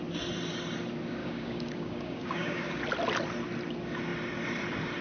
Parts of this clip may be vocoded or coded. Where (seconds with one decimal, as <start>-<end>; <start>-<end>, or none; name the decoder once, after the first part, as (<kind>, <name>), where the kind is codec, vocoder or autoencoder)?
1.2-2.8 (codec, DAC)